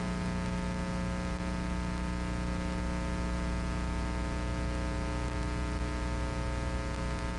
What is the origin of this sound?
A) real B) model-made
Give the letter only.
A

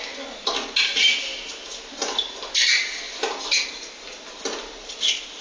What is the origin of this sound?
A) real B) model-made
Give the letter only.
A